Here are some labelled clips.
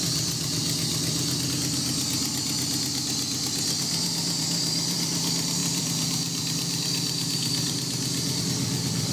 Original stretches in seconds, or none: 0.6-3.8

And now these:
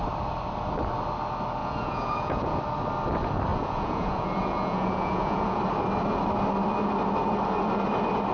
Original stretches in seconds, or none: 0.0-1.6; 2.6-3.5; 5.6-8.3

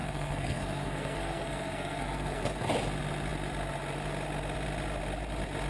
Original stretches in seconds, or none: 2.7-5.7

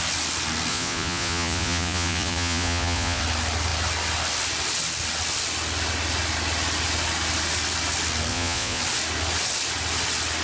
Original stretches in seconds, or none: 0.0-0.7; 3.2-8.3; 8.8-10.4

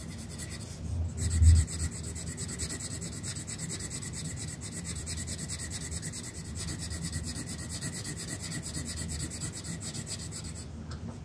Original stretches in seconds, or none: 0.0-3.3; 5.2-11.2

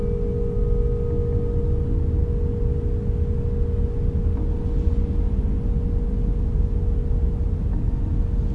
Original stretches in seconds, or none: 0.0-8.5

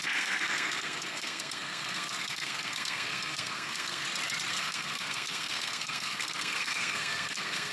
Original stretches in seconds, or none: 4.0-4.5